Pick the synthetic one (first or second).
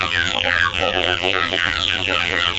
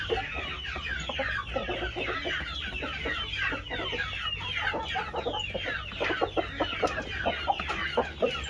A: first